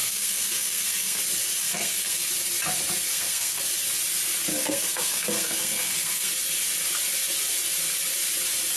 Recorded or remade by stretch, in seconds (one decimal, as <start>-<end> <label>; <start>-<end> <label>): 0.0-1.2 remade; 1.2-1.6 recorded; 1.6-2.3 remade; 2.3-3.1 recorded; 3.1-3.6 remade; 3.6-4.5 recorded; 4.5-6.3 remade; 6.3-8.8 recorded